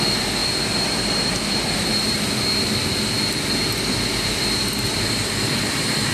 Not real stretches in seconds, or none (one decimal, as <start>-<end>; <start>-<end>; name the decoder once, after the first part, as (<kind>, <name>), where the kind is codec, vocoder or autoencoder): 0.0-1.9 (vocoder, BigVGAN v2); 5.6-6.1